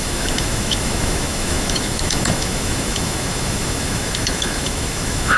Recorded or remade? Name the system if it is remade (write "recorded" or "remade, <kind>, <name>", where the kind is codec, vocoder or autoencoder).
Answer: remade, autoencoder, DAC-VAE